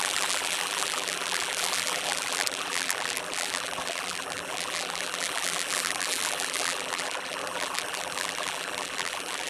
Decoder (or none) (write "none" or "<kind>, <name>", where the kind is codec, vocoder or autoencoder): vocoder, BigVGAN v2